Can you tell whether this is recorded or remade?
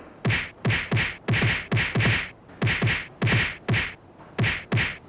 recorded